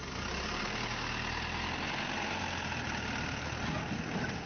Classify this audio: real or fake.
real